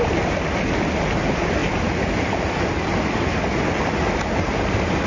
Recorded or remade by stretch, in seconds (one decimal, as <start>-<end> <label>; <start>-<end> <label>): 0.0-5.1 recorded